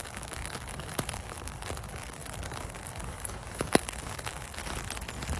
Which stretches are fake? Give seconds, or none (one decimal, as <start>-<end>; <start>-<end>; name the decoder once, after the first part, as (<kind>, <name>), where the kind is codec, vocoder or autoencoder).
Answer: 0.0-4.6 (codec, DAC)